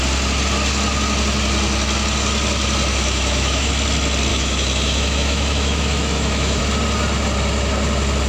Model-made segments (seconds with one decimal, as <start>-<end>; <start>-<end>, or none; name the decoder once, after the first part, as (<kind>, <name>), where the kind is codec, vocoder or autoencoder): 2.9-3.7 (autoencoder, DAC-VAE); 4.3-6.6